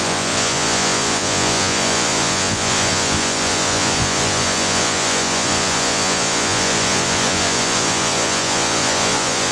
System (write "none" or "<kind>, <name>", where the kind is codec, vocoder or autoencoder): vocoder, Vocos